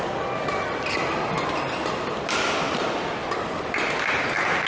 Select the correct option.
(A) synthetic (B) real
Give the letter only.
B